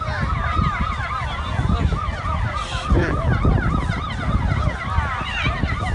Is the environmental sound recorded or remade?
recorded